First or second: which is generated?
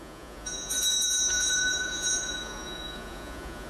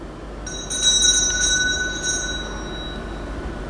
first